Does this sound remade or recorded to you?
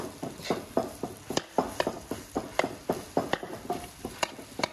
recorded